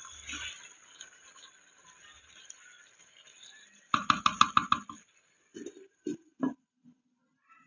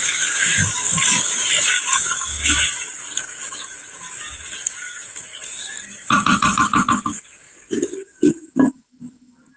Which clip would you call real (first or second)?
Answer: first